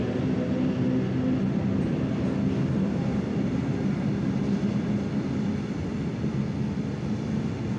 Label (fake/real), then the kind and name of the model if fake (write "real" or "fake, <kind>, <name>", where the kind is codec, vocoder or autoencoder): real